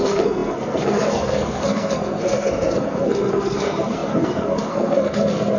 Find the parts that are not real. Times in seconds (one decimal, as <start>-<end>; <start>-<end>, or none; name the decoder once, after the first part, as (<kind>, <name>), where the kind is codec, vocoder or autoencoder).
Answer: 0.0-5.6 (codec, SNAC)